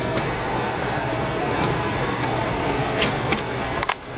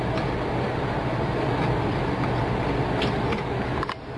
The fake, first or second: first